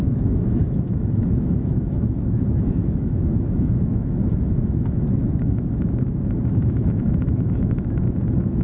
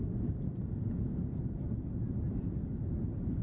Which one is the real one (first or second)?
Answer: second